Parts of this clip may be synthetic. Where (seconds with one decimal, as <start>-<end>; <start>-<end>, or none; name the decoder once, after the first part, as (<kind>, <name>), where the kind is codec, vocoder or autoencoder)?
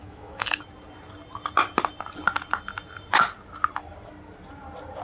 0.0-0.6 (autoencoder, DAC-VAE)